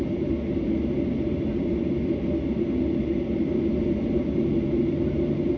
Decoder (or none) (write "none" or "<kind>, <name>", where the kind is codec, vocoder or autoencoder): none